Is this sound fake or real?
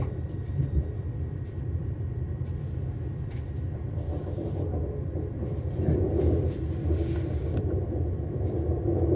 fake